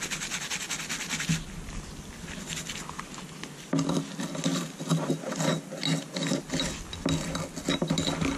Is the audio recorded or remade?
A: recorded